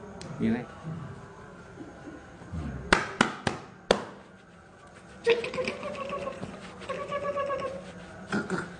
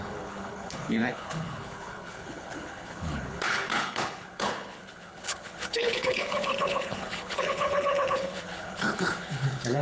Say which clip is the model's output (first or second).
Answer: second